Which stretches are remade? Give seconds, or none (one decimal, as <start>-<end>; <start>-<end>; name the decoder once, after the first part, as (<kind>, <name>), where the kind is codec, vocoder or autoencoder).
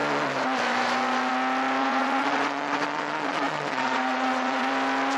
1.8-4.7 (vocoder, Vocos)